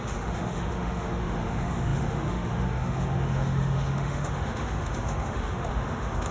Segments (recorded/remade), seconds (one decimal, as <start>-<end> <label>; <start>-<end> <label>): 0.0-6.3 remade

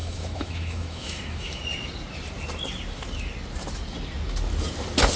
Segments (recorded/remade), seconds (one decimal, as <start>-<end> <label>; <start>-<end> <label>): 0.0-1.6 remade; 1.6-5.2 recorded